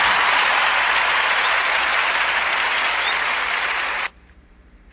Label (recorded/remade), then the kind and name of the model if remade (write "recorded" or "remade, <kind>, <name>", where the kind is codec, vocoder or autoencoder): remade, vocoder, BigVGAN v2